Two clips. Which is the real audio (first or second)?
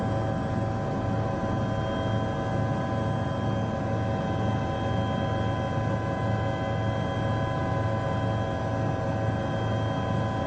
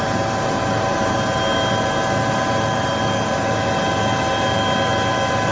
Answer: first